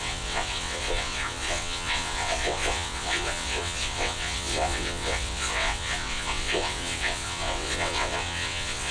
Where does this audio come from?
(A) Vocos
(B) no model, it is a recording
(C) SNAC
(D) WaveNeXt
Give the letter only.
D